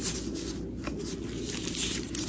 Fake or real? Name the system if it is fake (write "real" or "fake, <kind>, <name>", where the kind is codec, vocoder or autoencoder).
real